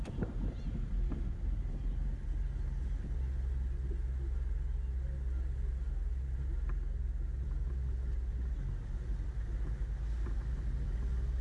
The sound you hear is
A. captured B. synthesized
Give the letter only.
A